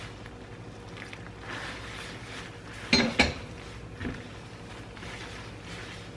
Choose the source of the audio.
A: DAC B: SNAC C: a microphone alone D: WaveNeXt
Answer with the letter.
C